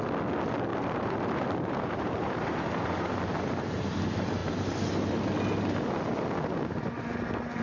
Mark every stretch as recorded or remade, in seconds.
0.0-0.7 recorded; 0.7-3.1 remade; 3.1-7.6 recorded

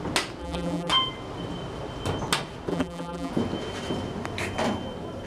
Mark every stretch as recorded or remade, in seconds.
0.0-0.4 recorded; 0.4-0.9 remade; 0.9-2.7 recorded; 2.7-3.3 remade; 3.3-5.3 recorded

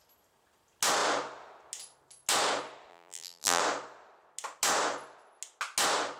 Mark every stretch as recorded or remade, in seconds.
0.0-2.9 recorded; 2.9-3.6 remade; 3.6-6.2 recorded

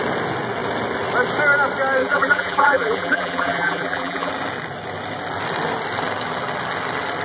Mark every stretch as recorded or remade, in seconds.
0.0-2.0 recorded; 2.0-4.3 remade; 4.3-7.2 recorded

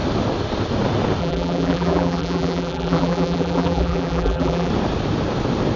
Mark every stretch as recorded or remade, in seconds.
0.0-1.2 recorded; 1.2-4.7 remade; 4.7-5.8 recorded

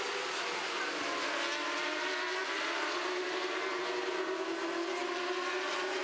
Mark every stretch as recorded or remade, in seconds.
0.0-2.4 recorded; 2.4-4.1 remade; 4.1-6.0 recorded